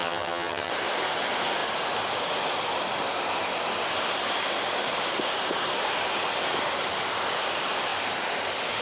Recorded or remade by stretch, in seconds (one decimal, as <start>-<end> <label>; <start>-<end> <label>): 0.0-0.7 remade; 0.7-8.8 recorded